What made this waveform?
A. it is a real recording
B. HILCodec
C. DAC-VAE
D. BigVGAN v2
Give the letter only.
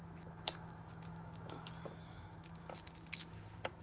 C